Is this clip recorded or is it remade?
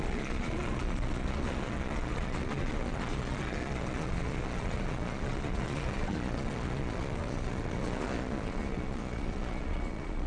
remade